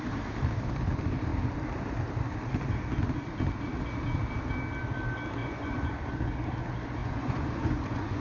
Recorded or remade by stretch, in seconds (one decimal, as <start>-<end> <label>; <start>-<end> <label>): 0.0-5.4 recorded; 5.4-6.1 remade; 6.1-7.0 recorded; 7.0-8.2 remade